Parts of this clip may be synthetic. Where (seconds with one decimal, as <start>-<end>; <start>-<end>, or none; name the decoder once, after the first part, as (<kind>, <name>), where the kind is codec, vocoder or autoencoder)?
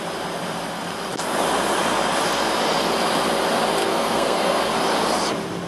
3.8-4.6 (codec, SNAC)